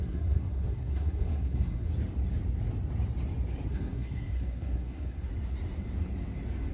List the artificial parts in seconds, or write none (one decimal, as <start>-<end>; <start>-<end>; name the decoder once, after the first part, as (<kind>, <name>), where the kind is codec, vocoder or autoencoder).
0.0-1.9 (codec, SNAC); 3.7-5.3